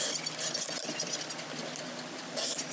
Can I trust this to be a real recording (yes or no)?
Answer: yes